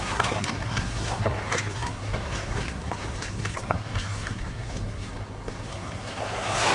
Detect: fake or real fake